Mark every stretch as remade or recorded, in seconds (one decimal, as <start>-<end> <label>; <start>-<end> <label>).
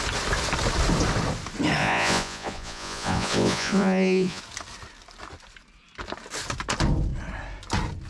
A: 0.0-1.8 recorded; 1.8-4.4 remade; 4.4-8.1 recorded